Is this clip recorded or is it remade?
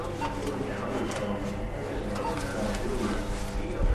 recorded